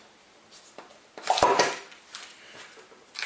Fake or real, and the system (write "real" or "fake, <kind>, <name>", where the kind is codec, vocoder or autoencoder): real